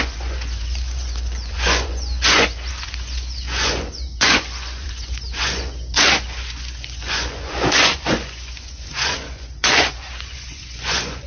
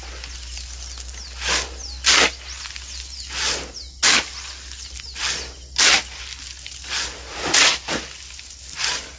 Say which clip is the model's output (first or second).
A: first